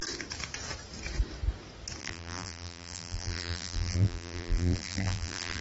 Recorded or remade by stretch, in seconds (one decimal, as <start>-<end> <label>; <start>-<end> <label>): 0.0-2.0 recorded; 2.0-5.6 remade